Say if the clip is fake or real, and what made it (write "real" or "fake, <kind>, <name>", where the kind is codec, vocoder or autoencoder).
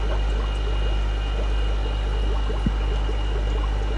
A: real